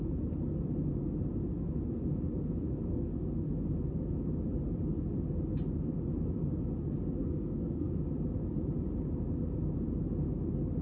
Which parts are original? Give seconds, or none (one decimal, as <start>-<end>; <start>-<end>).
0.0-2.9; 3.5-7.2; 8.0-10.8